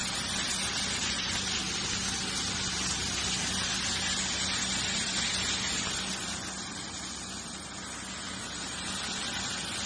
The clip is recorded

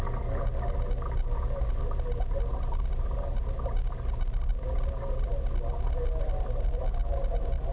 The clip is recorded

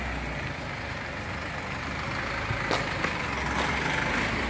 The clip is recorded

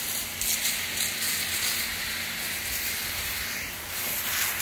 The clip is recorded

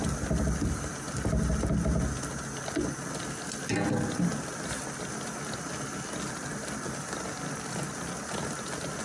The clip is recorded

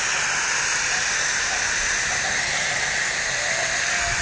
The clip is recorded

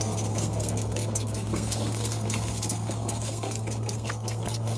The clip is remade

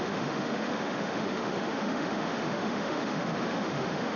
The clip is remade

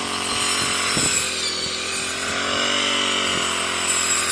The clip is recorded